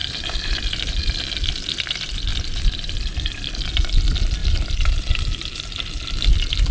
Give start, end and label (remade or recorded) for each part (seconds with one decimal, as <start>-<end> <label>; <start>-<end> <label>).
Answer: 0.0-0.6 remade; 0.6-4.4 recorded; 4.4-5.1 remade; 5.1-6.7 recorded